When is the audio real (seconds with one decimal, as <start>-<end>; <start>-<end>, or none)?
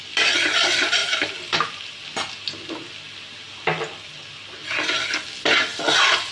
0.0-6.3